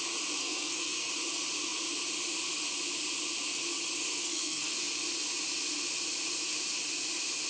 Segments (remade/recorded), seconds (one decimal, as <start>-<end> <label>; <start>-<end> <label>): 0.0-0.4 recorded; 0.4-1.1 remade; 1.1-4.1 recorded; 4.1-4.7 remade; 4.7-7.5 recorded